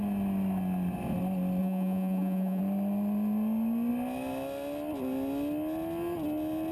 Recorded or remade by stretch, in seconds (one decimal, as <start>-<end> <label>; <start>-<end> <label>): 0.0-1.6 recorded; 1.6-2.6 remade; 2.6-6.7 recorded